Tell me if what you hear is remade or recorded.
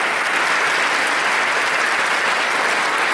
recorded